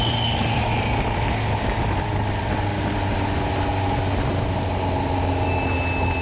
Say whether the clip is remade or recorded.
recorded